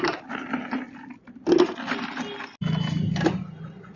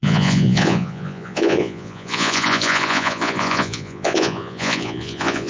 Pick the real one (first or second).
first